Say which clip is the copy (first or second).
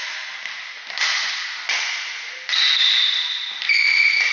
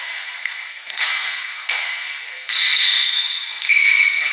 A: second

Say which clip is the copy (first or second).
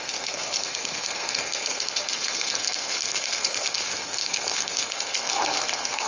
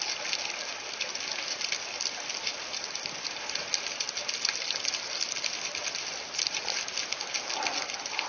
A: first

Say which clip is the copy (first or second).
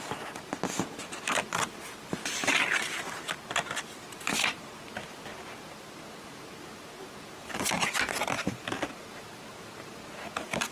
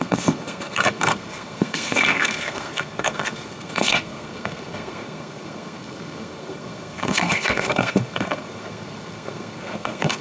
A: second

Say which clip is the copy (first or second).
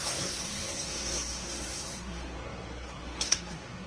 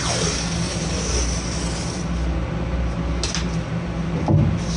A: first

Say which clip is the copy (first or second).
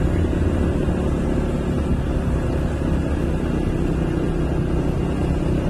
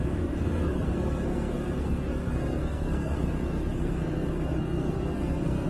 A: second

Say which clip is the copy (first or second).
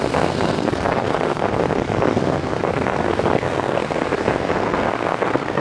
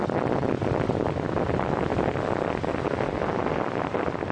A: first